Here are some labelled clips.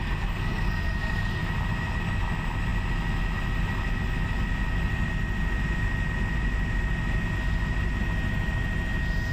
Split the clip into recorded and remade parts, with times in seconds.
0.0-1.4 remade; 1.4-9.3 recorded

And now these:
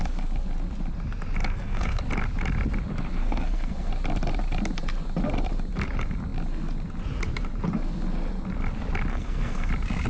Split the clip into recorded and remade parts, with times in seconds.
0.0-1.4 recorded; 1.4-2.0 remade; 2.0-3.2 recorded; 3.2-3.9 remade; 3.9-9.1 recorded; 9.1-9.7 remade; 9.7-10.1 recorded